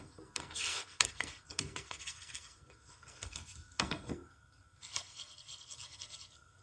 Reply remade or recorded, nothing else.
remade